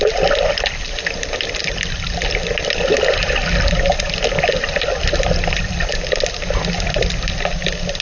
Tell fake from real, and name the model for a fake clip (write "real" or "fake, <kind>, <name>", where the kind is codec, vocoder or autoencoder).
real